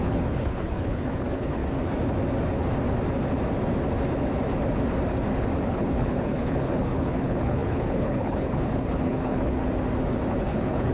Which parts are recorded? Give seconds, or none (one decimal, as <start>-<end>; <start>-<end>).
1.6-5.6; 9.6-10.3